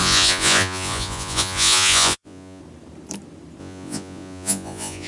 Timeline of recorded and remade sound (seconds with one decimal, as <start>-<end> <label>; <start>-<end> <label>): 0.0-2.6 remade; 2.6-3.6 recorded; 3.6-5.1 remade